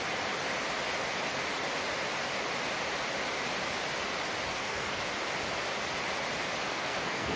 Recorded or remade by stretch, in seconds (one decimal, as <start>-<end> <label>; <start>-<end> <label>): 0.0-4.5 recorded; 4.5-5.0 remade; 5.0-6.7 recorded; 6.7-7.4 remade